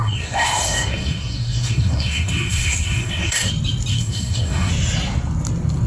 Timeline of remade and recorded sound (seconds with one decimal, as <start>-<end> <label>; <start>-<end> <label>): 0.0-3.5 remade; 3.5-3.9 recorded; 3.9-4.7 remade; 4.7-5.9 recorded